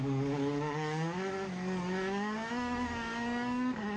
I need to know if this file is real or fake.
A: fake